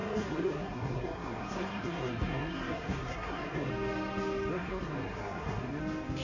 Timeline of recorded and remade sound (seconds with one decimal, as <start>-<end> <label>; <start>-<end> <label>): 0.0-3.7 remade; 3.7-4.5 recorded; 4.5-5.8 remade; 5.8-6.2 recorded